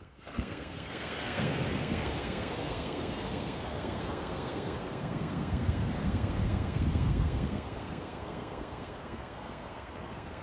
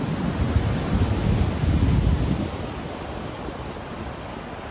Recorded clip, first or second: second